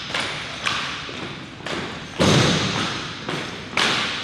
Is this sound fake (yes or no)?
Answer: no